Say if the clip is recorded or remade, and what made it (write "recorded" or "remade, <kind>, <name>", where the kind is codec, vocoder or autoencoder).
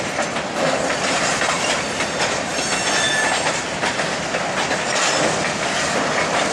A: recorded